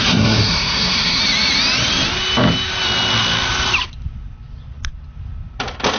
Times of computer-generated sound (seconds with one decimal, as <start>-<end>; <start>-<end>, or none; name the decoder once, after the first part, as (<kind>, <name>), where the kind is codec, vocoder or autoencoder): 0.0-1.2 (codec, SNAC)